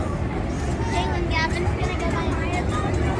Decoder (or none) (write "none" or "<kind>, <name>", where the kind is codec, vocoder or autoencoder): none